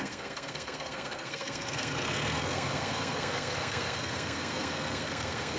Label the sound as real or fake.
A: fake